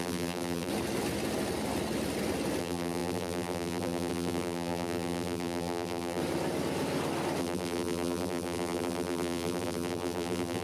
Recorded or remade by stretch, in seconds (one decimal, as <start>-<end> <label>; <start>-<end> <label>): 0.0-0.7 remade; 0.7-2.6 recorded; 2.6-6.2 remade; 6.2-7.4 recorded; 7.4-10.6 remade